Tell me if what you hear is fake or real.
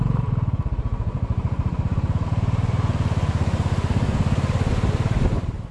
fake